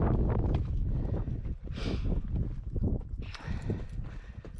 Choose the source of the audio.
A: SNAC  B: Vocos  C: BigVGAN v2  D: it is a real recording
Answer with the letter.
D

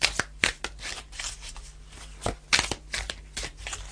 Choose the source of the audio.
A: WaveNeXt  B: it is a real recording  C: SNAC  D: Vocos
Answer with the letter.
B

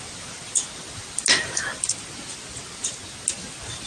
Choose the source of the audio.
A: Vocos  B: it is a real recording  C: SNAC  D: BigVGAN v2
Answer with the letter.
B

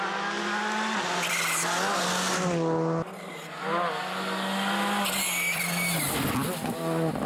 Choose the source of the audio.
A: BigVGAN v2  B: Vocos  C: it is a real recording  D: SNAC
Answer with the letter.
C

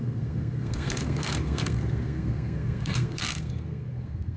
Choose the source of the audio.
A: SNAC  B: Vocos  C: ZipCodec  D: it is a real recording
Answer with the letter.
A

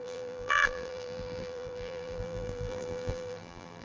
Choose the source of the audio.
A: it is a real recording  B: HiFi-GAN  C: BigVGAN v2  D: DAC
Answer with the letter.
C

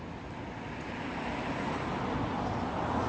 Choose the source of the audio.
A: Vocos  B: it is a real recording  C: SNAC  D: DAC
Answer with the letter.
B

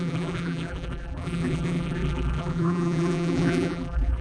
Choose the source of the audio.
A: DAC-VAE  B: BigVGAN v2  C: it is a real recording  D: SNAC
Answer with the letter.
B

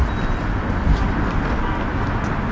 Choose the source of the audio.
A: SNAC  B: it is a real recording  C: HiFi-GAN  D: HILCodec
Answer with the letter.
B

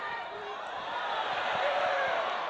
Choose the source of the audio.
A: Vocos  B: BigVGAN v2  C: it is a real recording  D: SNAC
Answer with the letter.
B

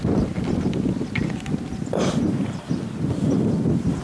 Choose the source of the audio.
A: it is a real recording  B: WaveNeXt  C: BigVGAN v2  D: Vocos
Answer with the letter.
A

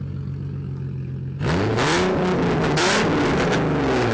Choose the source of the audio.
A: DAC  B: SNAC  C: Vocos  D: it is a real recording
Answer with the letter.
D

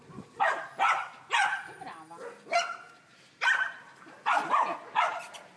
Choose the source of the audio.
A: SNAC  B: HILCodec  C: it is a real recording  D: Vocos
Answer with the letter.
C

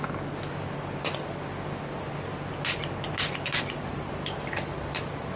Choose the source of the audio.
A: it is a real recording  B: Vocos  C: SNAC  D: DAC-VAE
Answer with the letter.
A